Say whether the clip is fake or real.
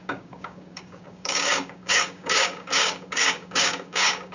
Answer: fake